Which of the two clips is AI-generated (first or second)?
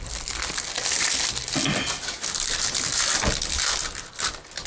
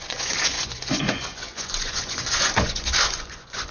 second